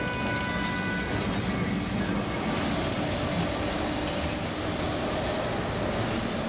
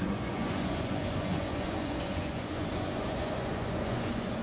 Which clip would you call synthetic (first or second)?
second